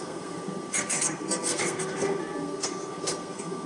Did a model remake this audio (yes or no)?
yes